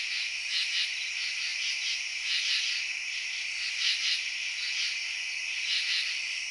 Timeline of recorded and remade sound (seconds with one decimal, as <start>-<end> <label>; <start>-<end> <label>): 0.0-6.5 recorded